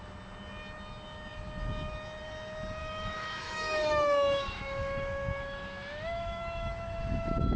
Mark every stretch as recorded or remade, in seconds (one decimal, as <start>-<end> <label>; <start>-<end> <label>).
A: 0.0-2.8 recorded; 2.8-7.6 remade